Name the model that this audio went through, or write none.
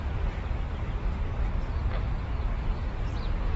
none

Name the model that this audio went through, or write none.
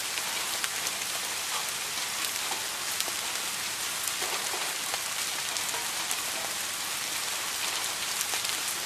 none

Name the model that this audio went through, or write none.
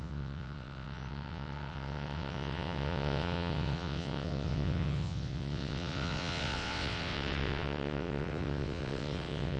vocoder, WaveNeXt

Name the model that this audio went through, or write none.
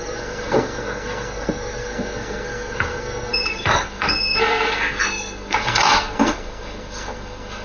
codec, SNAC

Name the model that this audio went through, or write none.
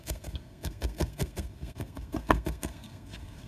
codec, SNAC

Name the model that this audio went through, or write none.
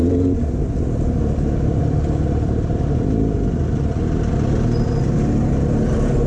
none